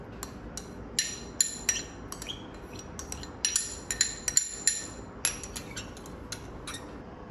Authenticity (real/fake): real